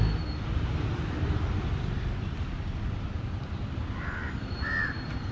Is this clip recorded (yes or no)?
yes